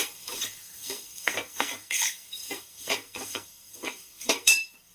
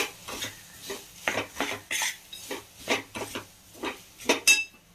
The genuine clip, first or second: second